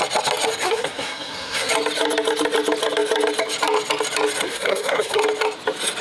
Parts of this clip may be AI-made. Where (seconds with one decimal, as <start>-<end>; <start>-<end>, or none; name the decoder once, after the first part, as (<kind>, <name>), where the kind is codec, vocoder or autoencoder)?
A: 0.6-1.7 (codec, SNAC); 4.4-5.2